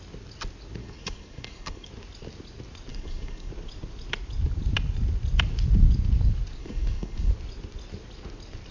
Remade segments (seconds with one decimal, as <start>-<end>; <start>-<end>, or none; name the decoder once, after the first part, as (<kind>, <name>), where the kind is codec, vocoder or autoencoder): 0.8-1.9 (codec, DAC); 2.9-3.5; 6.6-7.3